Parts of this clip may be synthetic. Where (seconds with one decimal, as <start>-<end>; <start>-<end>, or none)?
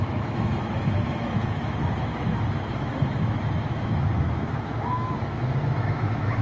0.0-6.4